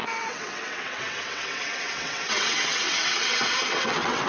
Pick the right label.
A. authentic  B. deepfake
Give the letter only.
B